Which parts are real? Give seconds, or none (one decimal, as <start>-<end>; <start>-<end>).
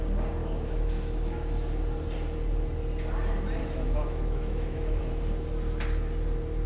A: 0.0-0.4; 1.7-3.6; 5.0-6.7